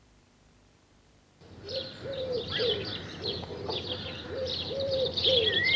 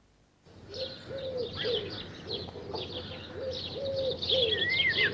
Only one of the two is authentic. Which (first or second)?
second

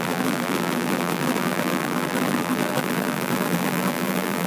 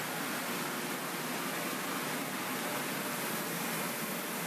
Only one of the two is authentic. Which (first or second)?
second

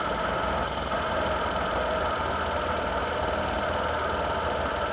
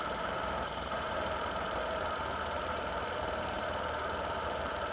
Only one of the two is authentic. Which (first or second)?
first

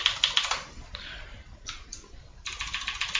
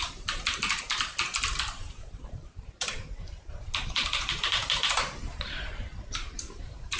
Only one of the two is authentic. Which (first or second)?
first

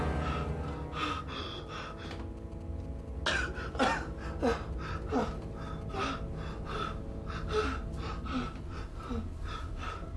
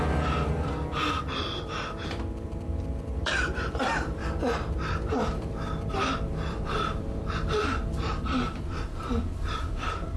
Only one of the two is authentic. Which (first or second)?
first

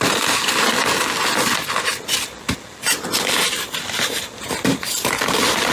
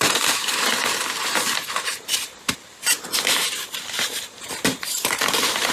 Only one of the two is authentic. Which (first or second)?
first